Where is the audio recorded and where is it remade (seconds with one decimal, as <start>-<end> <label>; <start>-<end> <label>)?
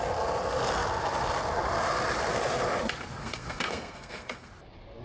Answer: 0.0-3.2 recorded; 3.2-4.5 remade; 4.5-5.0 recorded